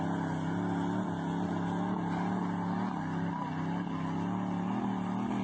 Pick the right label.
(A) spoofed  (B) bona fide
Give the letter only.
B